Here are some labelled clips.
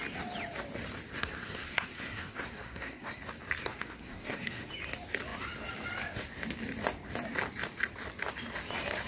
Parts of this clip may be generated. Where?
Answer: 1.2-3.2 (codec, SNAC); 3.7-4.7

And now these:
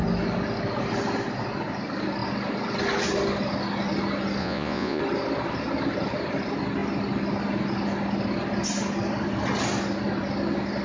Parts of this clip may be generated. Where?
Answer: 4.4-5.0 (vocoder, Vocos)

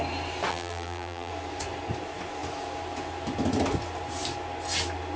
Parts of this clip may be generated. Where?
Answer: 0.5-1.3 (vocoder, BigVGAN v2)

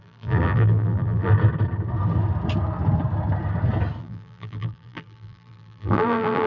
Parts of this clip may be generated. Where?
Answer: 0.0-1.3 (vocoder, BigVGAN v2); 4.0-6.5

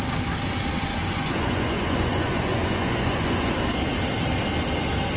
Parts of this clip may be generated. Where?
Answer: 0.9-3.6 (vocoder, Vocos)

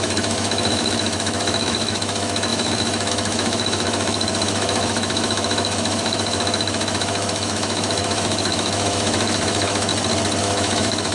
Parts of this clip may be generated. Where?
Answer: 0.0-9.9 (autoencoder, DAC-VAE); 10.4-11.1

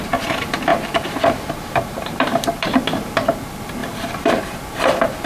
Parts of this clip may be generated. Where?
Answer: 0.7-2.8 (vocoder, BigVGAN v2); 3.8-4.4

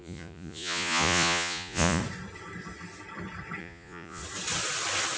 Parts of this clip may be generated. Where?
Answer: 0.0-2.0 (vocoder, Vocos); 3.6-4.2